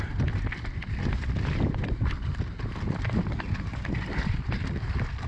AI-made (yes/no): no